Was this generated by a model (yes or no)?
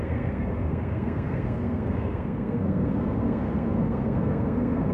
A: yes